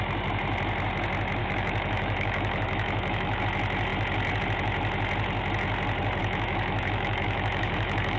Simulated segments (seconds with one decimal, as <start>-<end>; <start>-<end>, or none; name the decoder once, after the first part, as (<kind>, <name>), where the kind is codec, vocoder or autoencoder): 1.4-3.4 (autoencoder, DAC-VAE); 6.2-8.2